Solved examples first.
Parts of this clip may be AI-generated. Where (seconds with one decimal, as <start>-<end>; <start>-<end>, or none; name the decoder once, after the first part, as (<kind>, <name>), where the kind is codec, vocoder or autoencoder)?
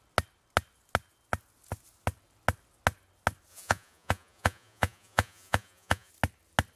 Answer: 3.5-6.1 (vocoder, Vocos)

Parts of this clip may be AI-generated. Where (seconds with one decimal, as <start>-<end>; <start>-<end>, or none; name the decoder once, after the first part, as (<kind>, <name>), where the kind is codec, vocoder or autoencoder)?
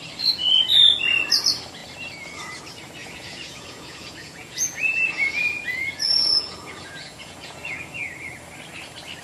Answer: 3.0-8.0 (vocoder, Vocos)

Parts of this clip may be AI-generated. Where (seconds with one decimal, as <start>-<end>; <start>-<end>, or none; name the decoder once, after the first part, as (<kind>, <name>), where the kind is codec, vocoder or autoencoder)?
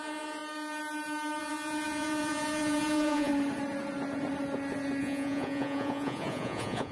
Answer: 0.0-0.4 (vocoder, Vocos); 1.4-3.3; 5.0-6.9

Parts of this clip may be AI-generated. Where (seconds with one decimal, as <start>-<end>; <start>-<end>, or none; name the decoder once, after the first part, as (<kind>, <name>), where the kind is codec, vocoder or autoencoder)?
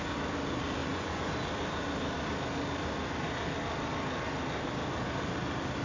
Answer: 0.8-1.3 (vocoder, Vocos)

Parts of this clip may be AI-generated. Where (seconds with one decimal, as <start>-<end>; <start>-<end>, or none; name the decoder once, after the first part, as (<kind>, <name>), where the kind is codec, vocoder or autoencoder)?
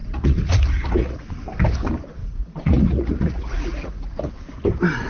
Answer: 0.0-1.3 (vocoder, Vocos); 2.2-4.3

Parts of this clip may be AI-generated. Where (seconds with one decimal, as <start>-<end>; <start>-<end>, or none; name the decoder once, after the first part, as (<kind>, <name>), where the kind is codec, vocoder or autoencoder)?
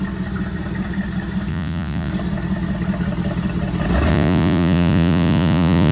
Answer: 1.5-2.1 (vocoder, Vocos); 4.1-5.9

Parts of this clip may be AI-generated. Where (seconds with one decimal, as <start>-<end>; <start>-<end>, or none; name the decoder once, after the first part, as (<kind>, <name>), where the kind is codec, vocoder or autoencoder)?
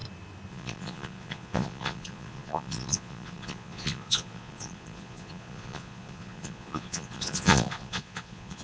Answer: 0.5-8.6 (vocoder, Vocos)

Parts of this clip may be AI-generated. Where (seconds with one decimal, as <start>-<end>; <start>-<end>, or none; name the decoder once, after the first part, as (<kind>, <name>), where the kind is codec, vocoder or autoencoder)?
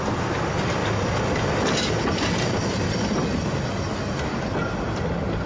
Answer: none